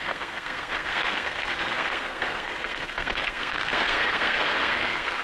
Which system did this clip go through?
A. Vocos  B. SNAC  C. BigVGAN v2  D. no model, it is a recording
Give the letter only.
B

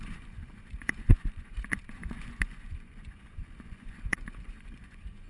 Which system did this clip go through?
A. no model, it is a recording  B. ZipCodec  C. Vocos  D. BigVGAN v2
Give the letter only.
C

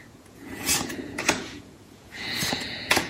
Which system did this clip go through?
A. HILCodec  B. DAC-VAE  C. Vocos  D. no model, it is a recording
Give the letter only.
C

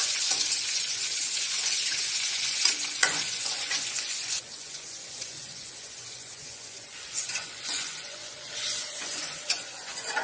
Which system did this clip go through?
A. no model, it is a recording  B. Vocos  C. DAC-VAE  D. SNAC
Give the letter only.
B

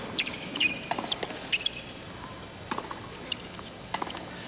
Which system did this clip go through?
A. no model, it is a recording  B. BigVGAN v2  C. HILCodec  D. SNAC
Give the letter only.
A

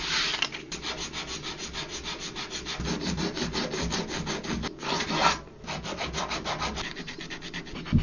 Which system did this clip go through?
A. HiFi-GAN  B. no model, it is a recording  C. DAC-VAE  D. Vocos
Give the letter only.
B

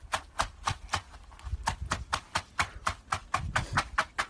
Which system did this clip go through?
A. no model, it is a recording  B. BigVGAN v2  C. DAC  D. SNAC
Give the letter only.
A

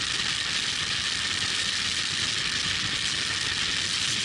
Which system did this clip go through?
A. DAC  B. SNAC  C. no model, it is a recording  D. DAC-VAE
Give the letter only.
C